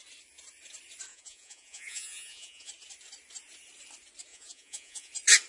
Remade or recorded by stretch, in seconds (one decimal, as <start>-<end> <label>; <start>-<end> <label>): 0.0-1.1 recorded; 1.1-2.7 remade; 2.7-4.3 recorded; 4.3-5.1 remade; 5.1-5.5 recorded